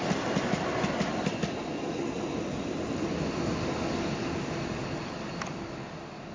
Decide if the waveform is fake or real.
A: real